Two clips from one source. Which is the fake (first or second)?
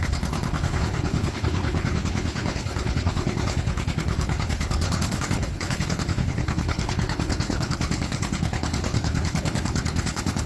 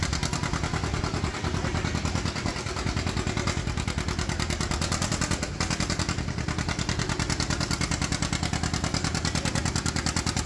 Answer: first